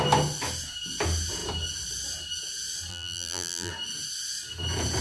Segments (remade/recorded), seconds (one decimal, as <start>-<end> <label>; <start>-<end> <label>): 0.0-2.9 recorded; 2.9-3.7 remade; 3.7-5.0 recorded